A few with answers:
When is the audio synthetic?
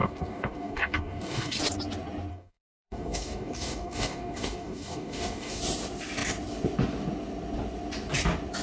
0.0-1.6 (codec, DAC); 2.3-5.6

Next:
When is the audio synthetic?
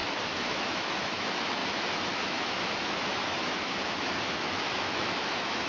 0.0-5.7 (autoencoder, DAC-VAE)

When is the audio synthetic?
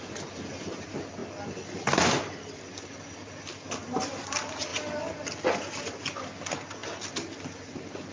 none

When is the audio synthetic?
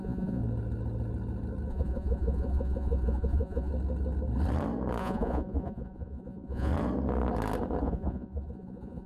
0.0-0.4 (vocoder, Vocos); 1.7-3.7; 5.0-6.7; 7.8-9.1